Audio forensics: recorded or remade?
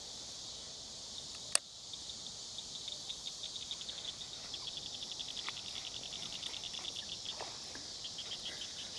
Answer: recorded